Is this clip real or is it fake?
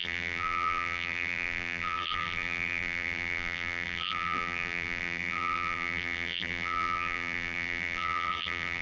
fake